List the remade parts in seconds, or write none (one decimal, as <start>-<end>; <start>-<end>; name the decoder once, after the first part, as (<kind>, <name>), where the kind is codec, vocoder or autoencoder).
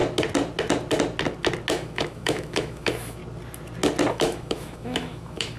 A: 1.7-3.2 (autoencoder, DAC-VAE); 4.1-5.6